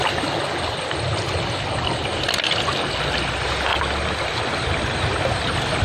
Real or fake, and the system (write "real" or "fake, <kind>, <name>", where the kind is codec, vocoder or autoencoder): real